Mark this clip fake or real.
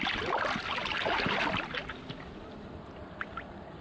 real